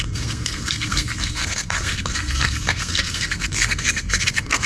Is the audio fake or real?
fake